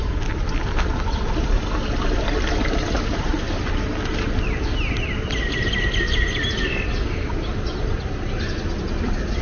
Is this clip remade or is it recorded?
recorded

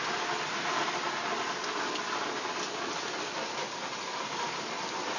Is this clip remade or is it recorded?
recorded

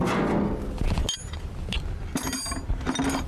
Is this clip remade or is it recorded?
recorded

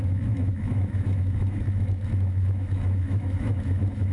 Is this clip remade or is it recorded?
remade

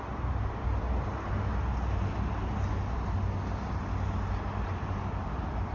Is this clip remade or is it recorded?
recorded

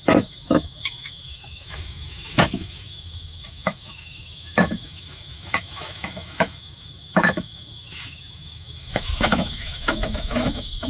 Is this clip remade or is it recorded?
remade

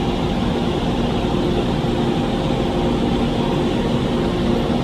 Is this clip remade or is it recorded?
recorded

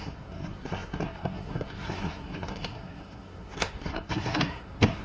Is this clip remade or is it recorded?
remade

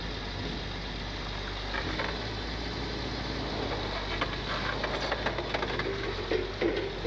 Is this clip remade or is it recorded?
recorded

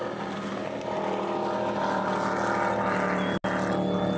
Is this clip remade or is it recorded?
recorded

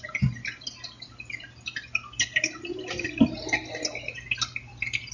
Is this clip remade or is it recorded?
recorded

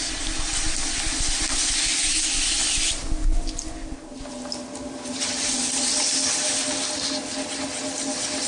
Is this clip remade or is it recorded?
recorded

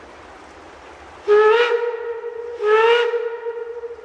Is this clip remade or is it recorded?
recorded